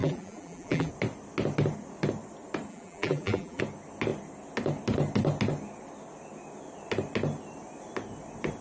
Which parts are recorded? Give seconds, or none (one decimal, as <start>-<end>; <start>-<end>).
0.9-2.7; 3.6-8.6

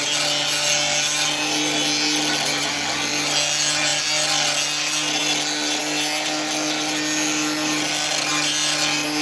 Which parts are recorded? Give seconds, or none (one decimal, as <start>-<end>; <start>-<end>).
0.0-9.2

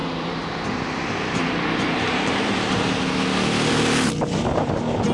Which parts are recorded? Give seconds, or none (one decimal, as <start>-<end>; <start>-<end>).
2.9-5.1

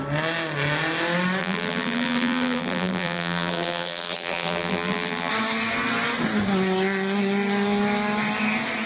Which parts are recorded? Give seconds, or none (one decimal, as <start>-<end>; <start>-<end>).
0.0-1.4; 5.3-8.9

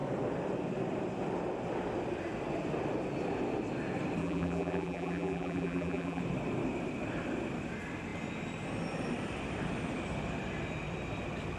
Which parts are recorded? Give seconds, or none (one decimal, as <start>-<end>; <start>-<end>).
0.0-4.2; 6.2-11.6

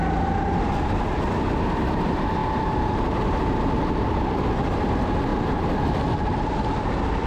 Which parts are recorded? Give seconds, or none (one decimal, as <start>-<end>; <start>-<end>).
0.0-2.4; 3.2-7.3

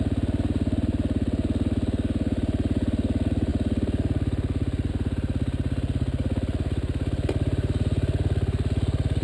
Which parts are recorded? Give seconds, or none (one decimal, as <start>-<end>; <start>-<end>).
0.0-9.2